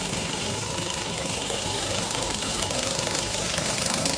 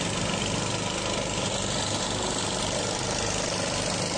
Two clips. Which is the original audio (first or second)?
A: second